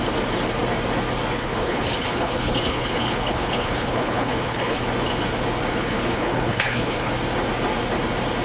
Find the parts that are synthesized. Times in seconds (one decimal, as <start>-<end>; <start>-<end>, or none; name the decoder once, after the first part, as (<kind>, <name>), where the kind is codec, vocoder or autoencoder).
1.3-4.8 (codec, HILCodec); 5.7-7.1